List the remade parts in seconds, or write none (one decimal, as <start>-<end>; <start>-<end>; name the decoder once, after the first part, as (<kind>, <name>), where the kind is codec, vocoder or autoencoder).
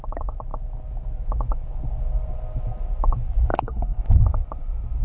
3.5-4.0 (codec, DAC)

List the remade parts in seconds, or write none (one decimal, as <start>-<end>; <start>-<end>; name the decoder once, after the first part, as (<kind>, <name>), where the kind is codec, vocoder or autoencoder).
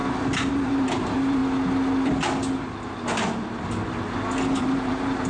0.5-1.4 (vocoder, BigVGAN v2); 4.6-5.3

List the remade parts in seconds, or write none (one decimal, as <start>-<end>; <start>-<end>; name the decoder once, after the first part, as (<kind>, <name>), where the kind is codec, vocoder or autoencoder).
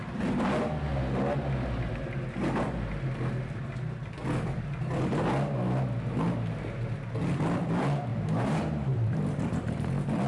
8.1-9.8 (vocoder, BigVGAN v2)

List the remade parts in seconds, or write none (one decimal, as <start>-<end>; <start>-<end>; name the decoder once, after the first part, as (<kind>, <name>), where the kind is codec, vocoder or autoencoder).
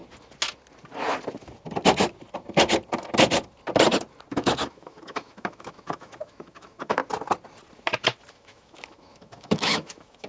4.3-7.0 (autoencoder, DAC-VAE); 8.3-10.3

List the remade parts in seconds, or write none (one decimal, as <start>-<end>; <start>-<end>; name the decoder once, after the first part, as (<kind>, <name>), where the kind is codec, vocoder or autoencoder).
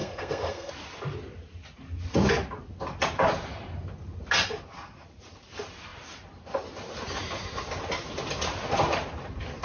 0.0-0.7 (codec, SNAC)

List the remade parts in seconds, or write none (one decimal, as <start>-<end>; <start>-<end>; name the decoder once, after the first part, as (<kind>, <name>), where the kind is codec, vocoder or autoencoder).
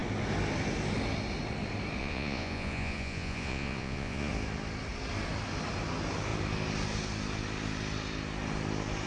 2.0-4.3 (vocoder, Vocos)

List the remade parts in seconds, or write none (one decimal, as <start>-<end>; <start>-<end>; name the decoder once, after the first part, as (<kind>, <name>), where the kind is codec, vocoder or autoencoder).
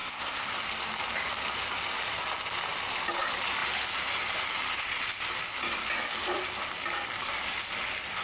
0.0-0.5 (codec, SNAC)